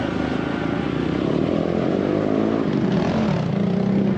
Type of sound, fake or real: real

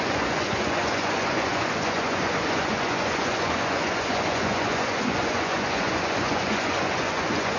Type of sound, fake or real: fake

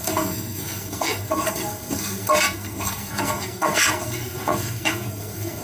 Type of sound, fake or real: fake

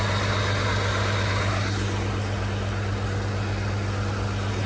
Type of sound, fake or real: real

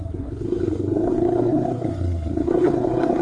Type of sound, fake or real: fake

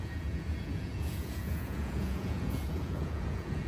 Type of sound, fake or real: fake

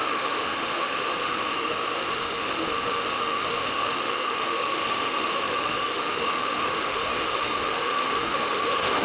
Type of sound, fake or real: fake